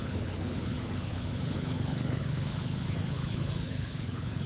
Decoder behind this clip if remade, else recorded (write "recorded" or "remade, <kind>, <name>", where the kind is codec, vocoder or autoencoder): remade, codec, HILCodec